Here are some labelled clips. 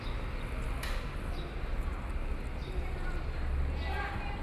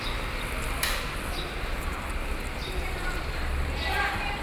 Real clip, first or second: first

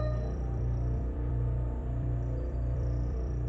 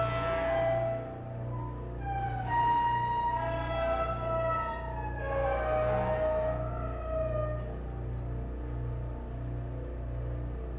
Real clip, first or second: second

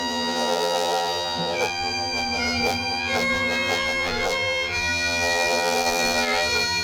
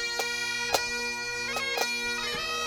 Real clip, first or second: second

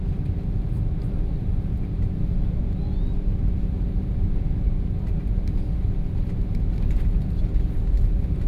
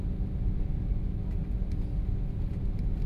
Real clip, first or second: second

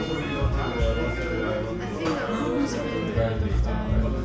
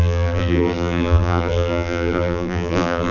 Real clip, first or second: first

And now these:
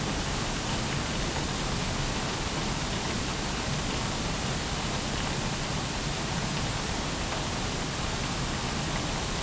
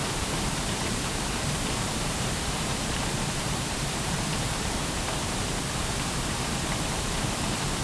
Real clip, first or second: first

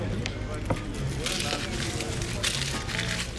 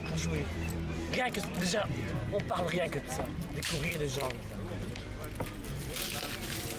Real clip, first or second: first